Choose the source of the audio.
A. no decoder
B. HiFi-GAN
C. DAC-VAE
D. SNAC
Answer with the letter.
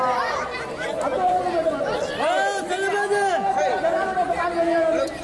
A